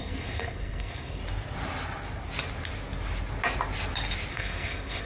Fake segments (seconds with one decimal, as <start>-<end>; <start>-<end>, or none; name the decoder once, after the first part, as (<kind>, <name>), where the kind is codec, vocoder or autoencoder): 0.0-1.2 (codec, SNAC); 4.3-5.1